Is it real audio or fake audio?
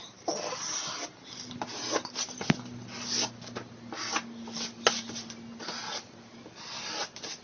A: real